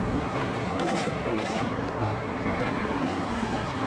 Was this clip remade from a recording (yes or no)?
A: yes